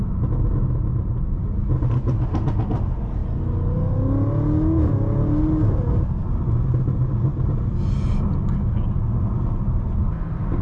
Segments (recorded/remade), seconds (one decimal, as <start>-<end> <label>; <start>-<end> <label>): 0.0-10.6 recorded